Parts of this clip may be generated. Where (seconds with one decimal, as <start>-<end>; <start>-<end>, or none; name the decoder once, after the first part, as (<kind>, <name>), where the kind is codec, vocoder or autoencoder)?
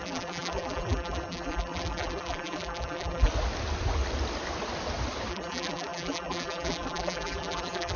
0.0-3.3 (vocoder, BigVGAN v2); 5.3-8.0